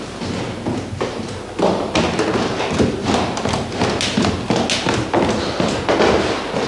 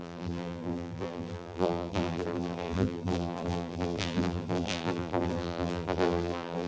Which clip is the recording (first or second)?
first